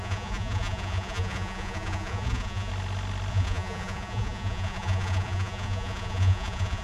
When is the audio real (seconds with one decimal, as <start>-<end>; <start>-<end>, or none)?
2.7-3.3